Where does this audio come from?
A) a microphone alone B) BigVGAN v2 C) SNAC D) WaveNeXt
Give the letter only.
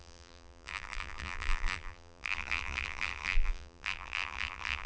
B